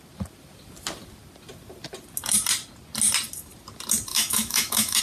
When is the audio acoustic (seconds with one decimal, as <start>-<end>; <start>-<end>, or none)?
0.0-4.1